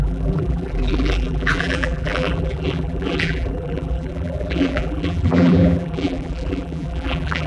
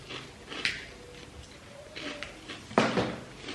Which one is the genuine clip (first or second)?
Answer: second